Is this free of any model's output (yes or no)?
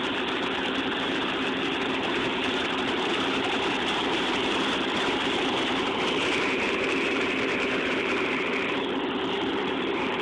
no